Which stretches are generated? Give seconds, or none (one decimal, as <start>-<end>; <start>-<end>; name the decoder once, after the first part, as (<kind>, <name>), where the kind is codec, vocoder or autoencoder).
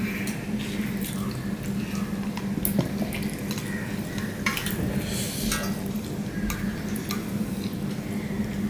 4.5-5.1 (vocoder, BigVGAN v2)